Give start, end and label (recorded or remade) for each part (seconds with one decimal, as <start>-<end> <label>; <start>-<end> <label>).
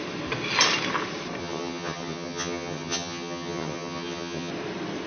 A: 0.0-1.4 recorded; 1.4-4.5 remade; 4.5-5.1 recorded